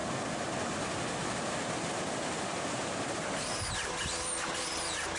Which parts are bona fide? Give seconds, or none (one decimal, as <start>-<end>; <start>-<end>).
0.0-5.2